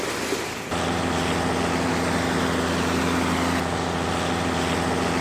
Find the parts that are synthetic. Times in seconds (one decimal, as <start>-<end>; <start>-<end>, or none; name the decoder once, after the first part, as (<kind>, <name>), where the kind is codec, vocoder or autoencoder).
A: none